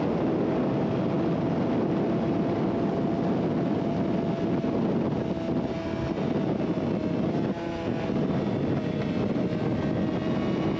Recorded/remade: recorded